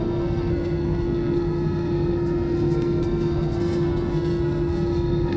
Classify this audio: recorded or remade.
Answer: remade